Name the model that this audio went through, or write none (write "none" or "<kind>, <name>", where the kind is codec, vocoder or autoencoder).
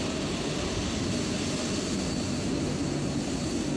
none